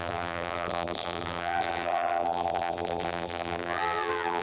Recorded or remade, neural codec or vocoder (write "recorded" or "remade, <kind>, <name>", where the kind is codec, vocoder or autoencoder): remade, vocoder, BigVGAN v2